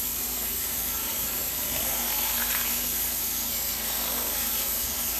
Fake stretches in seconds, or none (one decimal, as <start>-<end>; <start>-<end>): 0.0-5.2